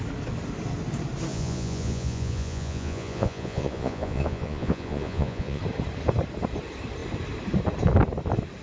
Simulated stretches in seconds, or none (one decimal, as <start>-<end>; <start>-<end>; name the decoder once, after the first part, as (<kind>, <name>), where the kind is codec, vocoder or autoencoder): 1.3-5.6 (vocoder, Vocos)